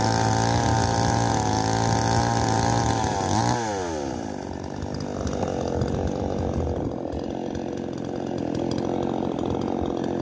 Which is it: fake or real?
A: real